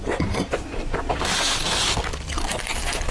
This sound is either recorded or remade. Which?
recorded